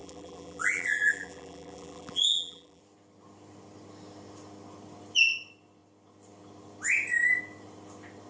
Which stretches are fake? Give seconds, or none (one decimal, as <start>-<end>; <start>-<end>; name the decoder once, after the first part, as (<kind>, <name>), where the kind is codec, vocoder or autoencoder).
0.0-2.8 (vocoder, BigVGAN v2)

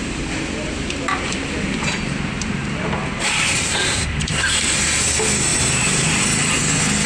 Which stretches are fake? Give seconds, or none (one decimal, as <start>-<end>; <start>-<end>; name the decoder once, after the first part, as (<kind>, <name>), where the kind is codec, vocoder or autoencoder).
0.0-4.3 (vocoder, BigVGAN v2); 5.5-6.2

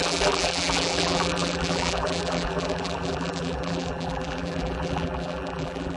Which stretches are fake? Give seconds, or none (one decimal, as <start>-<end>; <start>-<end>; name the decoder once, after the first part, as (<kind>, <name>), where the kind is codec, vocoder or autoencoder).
0.0-6.0 (vocoder, BigVGAN v2)

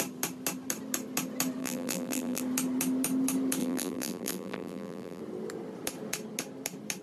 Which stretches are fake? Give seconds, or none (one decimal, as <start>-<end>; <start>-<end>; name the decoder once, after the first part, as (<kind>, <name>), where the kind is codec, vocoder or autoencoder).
1.6-2.4 (vocoder, BigVGAN v2); 3.6-5.2

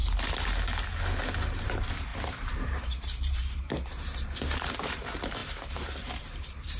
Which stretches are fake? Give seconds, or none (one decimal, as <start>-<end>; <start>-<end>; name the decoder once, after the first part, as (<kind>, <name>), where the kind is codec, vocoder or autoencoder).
1.6-6.8 (vocoder, BigVGAN v2)

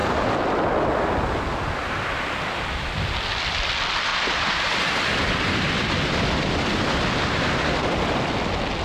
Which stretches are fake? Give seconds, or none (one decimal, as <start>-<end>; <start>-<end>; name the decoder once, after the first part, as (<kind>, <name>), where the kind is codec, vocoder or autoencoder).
4.1-5.1 (vocoder, BigVGAN v2)

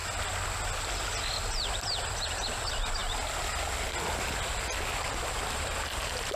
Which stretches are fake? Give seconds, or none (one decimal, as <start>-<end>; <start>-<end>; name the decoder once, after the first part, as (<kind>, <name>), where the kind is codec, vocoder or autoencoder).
none